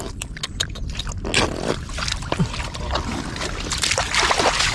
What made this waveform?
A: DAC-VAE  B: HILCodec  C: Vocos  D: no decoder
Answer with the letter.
D